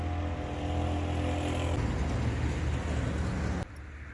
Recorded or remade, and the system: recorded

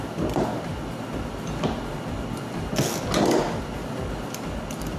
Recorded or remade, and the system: recorded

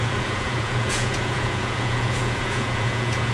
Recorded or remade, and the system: remade, vocoder, Vocos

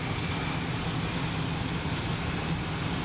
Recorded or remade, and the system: recorded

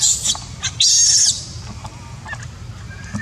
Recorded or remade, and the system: recorded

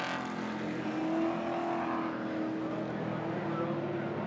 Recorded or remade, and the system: recorded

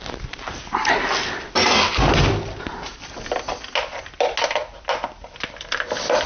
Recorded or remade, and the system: recorded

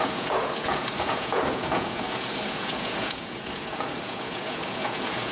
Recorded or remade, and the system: remade, vocoder, Vocos